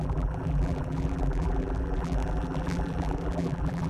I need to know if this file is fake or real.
fake